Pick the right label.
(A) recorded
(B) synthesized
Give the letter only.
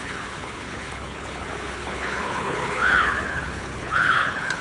B